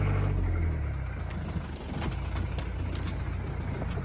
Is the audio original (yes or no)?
yes